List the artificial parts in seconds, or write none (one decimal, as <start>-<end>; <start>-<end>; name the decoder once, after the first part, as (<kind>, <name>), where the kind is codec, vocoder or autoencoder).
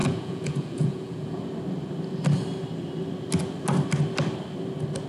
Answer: 0.0-1.4 (vocoder, Vocos)